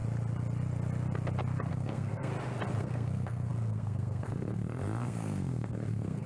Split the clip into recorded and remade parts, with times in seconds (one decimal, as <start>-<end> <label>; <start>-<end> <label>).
0.0-1.7 recorded; 1.7-2.3 remade; 2.3-2.8 recorded; 2.8-6.3 remade